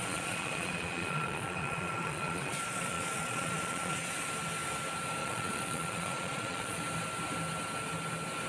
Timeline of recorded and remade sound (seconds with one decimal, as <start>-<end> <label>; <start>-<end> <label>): 0.0-4.3 remade; 4.3-5.2 recorded; 5.2-6.8 remade; 6.8-8.5 recorded